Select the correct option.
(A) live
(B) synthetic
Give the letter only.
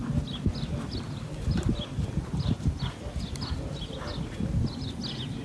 A